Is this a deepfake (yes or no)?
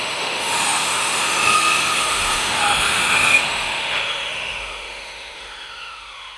yes